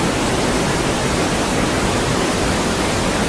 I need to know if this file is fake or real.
real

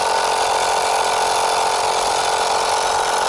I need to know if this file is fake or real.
real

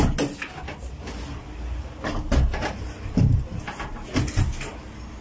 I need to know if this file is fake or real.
real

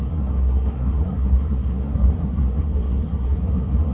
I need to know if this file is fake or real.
fake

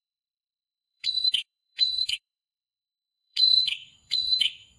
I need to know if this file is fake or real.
fake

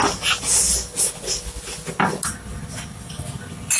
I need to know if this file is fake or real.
real